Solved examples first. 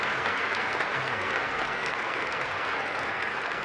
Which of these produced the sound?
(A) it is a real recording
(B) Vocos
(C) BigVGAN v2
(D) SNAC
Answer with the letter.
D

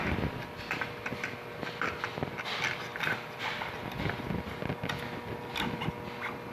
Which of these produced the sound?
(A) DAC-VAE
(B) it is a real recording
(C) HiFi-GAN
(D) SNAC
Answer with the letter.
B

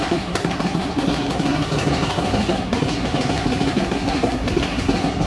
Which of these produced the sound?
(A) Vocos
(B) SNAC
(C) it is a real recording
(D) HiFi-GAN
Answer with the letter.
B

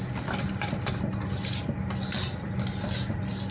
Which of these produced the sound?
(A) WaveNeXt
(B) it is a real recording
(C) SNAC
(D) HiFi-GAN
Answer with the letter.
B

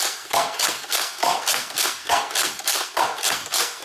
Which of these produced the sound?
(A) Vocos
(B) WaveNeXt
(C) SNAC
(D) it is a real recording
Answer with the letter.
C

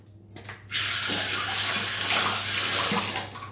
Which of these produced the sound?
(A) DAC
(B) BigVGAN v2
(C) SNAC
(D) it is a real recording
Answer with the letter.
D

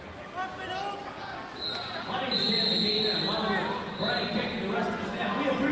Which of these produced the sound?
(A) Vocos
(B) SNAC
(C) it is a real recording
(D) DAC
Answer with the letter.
C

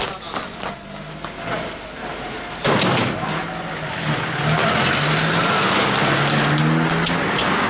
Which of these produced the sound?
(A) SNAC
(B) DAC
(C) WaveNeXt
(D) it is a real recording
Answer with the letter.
D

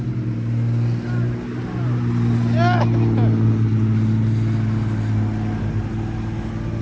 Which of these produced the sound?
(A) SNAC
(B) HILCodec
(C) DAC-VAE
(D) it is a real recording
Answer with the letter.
D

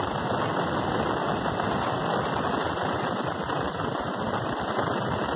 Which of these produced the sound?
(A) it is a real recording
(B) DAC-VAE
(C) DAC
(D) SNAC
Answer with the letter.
A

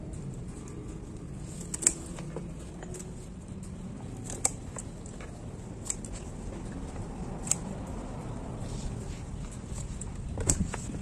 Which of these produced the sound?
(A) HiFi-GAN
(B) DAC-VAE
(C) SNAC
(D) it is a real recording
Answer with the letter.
D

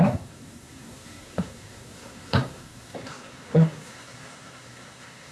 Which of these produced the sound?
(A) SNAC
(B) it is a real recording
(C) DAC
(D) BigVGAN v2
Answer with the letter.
A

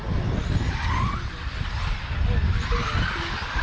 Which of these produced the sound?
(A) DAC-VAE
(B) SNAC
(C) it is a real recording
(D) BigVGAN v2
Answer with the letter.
C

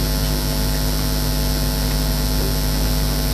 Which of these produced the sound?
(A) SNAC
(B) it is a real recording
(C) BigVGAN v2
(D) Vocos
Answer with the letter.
B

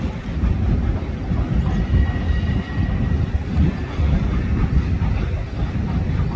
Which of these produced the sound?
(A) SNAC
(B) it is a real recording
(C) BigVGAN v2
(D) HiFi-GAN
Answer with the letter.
B